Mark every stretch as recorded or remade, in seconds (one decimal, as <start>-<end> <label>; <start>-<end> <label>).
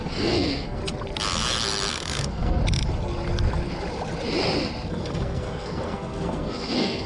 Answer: 0.0-0.8 remade; 0.8-1.9 recorded; 1.9-2.6 remade; 2.6-4.9 recorded; 4.9-7.1 remade